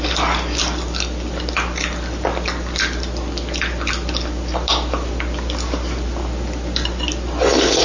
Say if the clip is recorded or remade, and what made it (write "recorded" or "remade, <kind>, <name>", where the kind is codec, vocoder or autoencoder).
recorded